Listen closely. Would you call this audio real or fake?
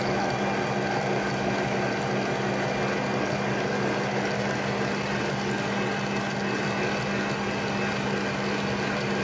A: real